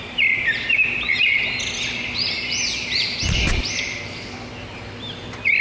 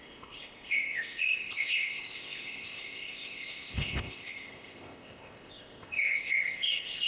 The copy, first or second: second